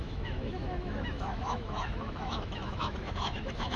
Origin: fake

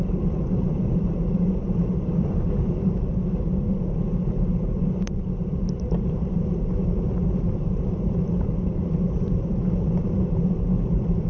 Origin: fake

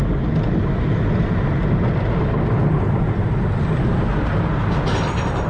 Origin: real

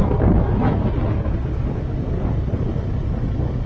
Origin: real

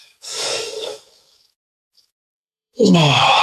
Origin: fake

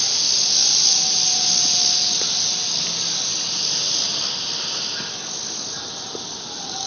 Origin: real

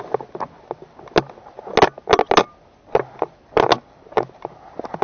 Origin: real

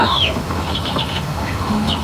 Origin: fake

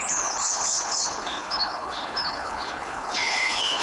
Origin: fake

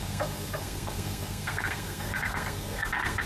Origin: fake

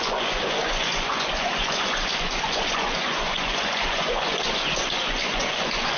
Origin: fake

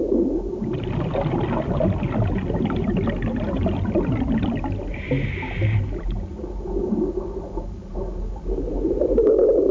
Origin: real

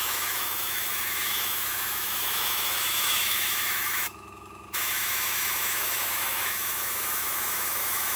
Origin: fake